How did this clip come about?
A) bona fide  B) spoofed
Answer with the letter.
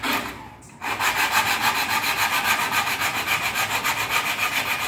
A